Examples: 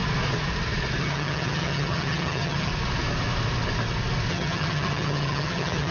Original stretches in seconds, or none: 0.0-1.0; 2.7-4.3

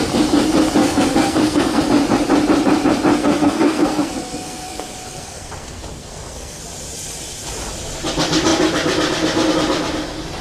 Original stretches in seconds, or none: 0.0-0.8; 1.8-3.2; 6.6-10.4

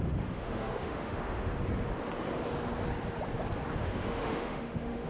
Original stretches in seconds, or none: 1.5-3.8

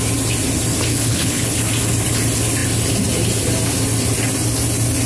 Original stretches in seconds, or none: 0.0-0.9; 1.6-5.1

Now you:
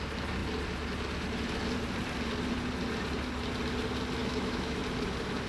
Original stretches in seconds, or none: 0.0-4.2; 4.8-5.5

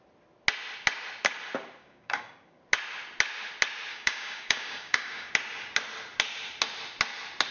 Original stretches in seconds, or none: 0.0-1.8; 2.6-3.9; 5.3-7.5

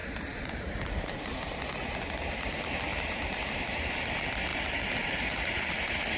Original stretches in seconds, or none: 1.6-2.9; 3.9-4.5

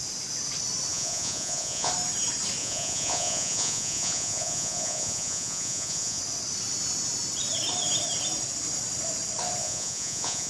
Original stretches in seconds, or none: 0.0-0.9; 1.9-2.6; 6.2-9.6